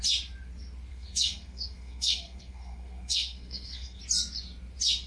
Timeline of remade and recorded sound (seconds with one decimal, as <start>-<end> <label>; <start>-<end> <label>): 0.0-0.9 recorded; 0.9-4.0 remade; 4.0-5.1 recorded